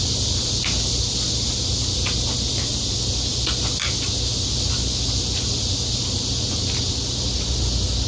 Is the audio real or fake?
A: real